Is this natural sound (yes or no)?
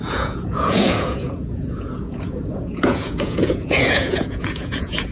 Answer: no